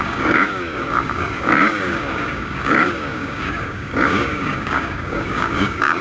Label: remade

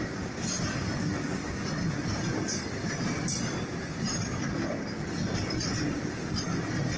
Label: recorded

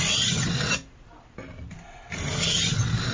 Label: recorded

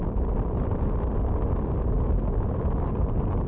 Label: recorded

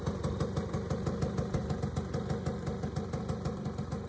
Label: recorded